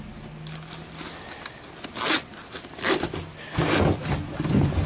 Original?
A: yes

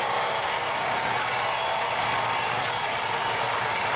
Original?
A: yes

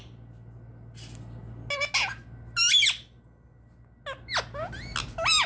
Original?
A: yes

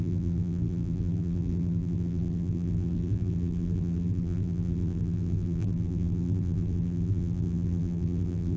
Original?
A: no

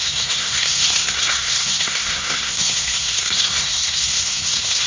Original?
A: no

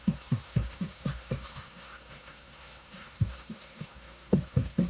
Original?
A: no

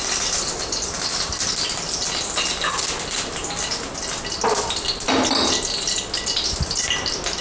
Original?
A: yes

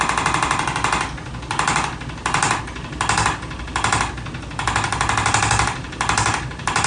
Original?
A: yes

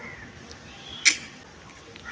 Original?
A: yes